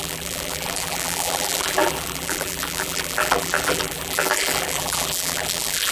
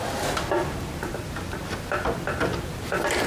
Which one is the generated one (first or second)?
first